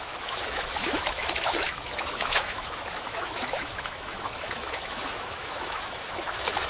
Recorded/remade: remade